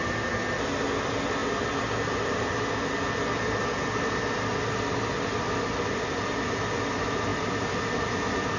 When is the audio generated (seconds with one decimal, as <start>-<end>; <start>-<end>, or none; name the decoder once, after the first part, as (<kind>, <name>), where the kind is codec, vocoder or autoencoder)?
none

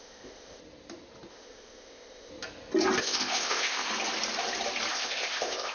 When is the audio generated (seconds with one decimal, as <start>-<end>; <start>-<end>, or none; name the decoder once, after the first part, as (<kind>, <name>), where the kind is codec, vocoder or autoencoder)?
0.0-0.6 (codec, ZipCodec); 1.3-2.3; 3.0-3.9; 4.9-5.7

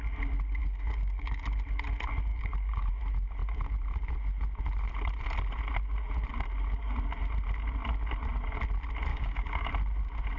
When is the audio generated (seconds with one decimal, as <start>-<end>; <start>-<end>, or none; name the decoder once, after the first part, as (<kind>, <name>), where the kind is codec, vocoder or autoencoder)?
0.6-1.4 (codec, DAC); 2.3-2.9; 9.1-9.7

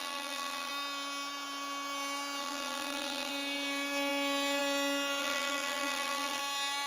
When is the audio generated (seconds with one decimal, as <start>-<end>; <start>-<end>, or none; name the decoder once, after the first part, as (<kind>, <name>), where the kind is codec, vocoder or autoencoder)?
0.0-0.7 (vocoder, BigVGAN v2); 2.4-3.3; 5.2-6.4

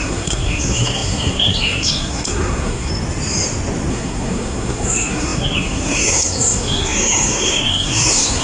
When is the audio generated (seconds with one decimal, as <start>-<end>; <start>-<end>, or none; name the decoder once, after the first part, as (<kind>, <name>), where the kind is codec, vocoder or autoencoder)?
0.0-2.9 (codec, SNAC); 3.9-8.4